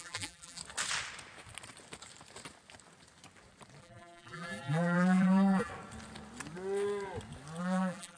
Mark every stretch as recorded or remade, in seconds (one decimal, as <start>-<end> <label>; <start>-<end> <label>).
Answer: 0.0-0.6 remade; 0.6-3.8 recorded; 3.8-5.7 remade; 5.7-7.6 recorded; 7.6-8.2 remade